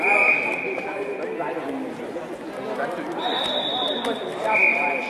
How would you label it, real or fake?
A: real